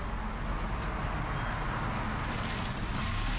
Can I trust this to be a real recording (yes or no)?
yes